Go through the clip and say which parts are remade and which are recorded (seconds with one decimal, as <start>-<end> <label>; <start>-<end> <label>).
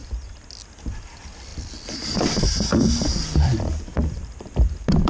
0.0-0.5 remade; 0.5-1.5 recorded; 1.5-2.3 remade; 2.3-2.7 recorded; 2.7-5.1 remade